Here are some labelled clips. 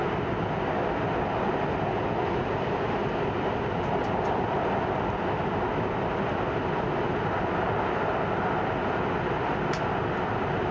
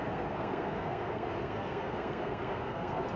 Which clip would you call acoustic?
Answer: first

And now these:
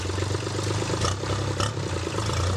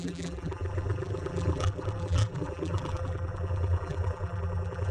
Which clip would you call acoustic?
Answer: first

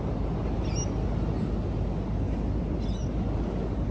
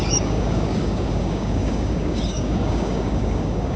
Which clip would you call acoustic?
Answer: first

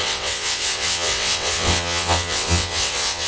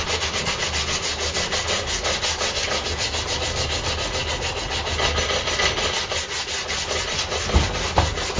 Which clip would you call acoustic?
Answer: second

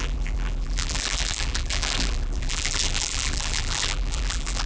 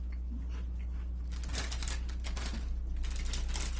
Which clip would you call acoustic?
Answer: second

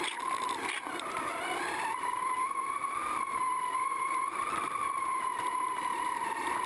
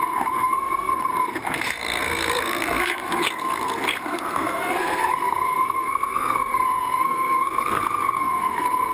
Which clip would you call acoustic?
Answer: first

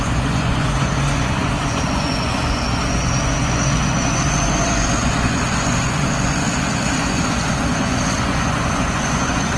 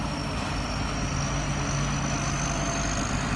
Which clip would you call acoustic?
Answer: second